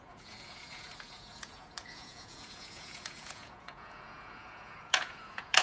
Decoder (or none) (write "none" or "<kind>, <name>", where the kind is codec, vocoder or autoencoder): vocoder, Vocos